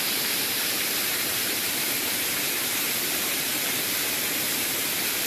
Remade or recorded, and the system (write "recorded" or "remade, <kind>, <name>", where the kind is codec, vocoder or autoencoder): remade, vocoder, BigVGAN v2